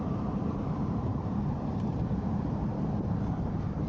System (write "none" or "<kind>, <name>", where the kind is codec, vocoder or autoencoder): vocoder, BigVGAN v2